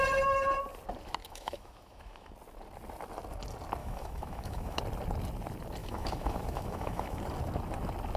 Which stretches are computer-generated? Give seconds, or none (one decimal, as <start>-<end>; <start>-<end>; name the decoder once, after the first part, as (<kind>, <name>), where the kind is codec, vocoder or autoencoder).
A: 1.2-2.3 (autoencoder, DAC-VAE); 3.8-4.8; 5.8-7.2